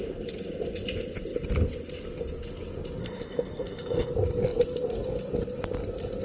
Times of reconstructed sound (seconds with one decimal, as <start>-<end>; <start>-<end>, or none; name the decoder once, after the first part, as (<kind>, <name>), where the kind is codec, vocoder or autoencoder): 3.0-4.1 (codec, SNAC)